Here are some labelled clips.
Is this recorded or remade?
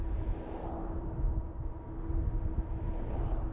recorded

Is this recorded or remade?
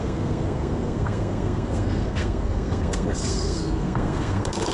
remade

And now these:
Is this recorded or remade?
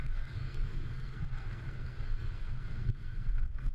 remade